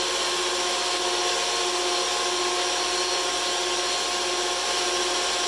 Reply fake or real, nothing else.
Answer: real